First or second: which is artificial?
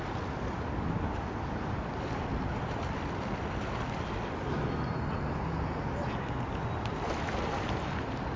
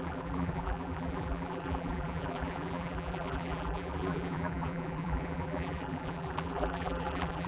second